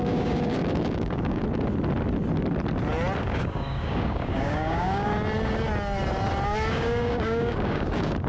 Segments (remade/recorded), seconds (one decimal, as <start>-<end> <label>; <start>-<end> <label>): 0.0-1.4 remade; 1.4-3.2 recorded; 3.2-5.1 remade; 5.1-6.7 recorded; 6.7-8.3 remade